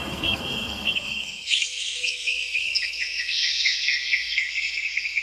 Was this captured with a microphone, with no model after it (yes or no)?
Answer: no